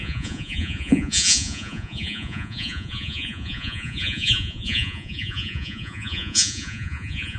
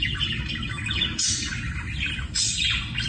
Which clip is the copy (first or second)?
first